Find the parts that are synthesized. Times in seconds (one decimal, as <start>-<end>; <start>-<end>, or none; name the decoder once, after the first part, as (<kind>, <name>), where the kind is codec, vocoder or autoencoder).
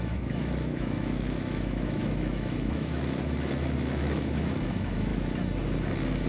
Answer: 0.0-5.1 (autoencoder, DAC-VAE)